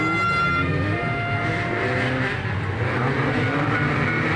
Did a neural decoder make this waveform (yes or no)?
no